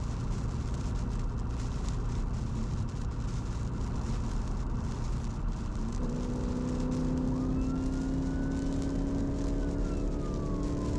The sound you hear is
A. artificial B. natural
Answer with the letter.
B